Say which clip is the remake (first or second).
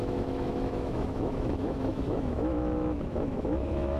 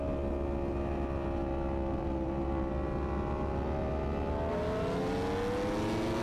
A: first